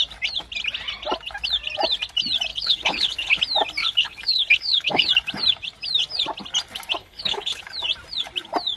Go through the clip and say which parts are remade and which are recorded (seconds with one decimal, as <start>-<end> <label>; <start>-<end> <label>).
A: 0.0-2.5 recorded; 2.5-3.4 remade; 3.4-3.8 recorded; 3.8-5.1 remade; 5.1-7.0 recorded; 7.0-7.6 remade; 7.6-8.8 recorded